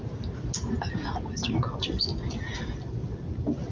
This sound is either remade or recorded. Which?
recorded